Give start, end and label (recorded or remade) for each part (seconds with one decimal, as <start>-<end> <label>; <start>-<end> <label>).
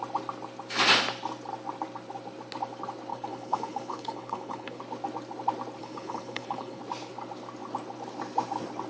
0.0-3.1 recorded; 3.1-4.8 remade; 4.8-5.8 recorded; 5.8-6.8 remade; 6.8-8.9 recorded